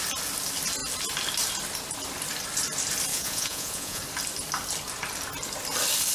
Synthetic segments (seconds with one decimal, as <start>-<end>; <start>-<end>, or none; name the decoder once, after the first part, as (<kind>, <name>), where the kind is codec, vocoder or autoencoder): 3.1-4.0 (vocoder, Vocos)